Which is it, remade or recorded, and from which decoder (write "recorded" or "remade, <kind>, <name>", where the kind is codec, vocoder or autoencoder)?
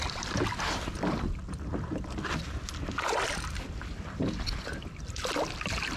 recorded